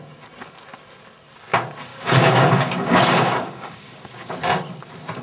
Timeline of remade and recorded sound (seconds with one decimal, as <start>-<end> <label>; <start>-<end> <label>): 0.0-1.9 recorded; 1.9-4.3 remade; 4.3-5.2 recorded